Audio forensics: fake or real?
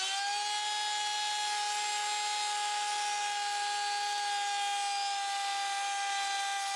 real